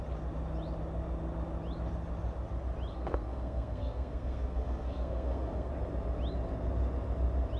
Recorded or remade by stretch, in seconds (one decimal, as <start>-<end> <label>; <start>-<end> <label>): 0.0-2.9 recorded; 2.9-5.7 remade; 5.7-7.6 recorded